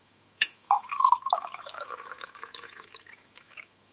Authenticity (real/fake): fake